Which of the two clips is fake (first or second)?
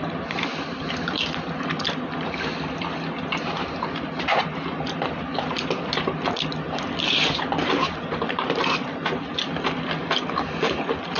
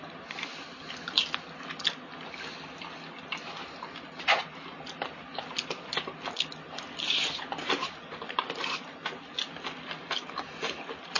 first